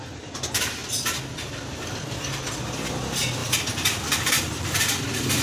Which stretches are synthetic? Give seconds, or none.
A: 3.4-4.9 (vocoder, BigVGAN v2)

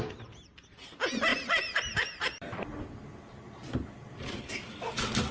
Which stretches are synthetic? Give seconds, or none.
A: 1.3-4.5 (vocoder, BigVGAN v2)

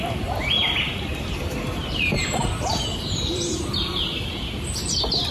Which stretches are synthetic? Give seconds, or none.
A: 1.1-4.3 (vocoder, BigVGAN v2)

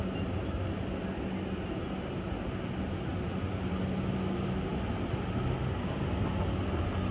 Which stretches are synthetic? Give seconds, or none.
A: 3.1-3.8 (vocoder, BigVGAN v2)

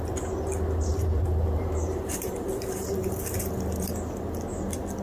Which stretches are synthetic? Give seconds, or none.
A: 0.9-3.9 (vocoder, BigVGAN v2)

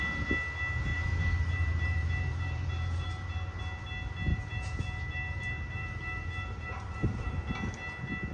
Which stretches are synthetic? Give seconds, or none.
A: 0.9-3.6 (vocoder, BigVGAN v2); 4.3-7.3

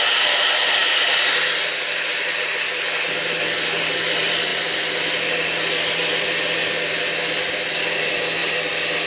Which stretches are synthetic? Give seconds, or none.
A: 0.8-1.4 (vocoder, BigVGAN v2); 4.5-8.0; 8.4-9.1

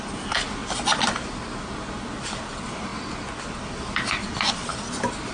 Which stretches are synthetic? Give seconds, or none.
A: 0.0-0.6 (vocoder, BigVGAN v2); 2.3-2.9; 3.4-4.7